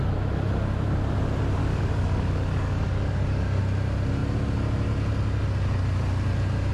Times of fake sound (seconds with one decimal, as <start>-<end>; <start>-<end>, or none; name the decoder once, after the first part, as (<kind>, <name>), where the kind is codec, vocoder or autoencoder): 1.6-3.6 (codec, DAC)